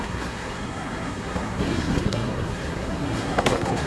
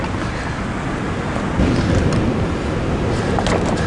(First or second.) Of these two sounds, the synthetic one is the first